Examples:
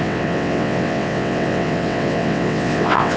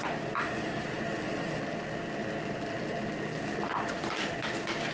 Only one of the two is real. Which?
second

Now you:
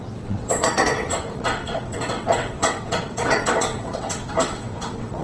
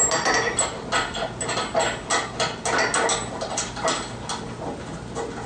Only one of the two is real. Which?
second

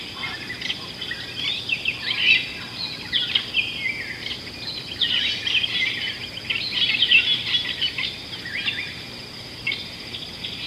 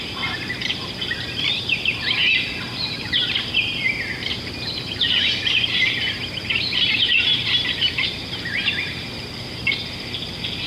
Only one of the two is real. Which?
first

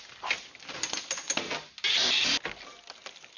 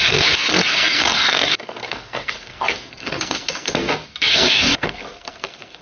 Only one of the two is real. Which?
first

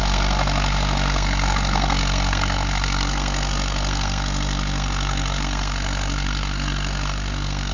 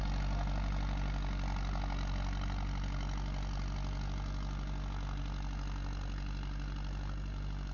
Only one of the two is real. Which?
second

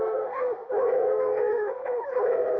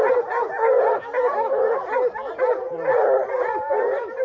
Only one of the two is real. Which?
second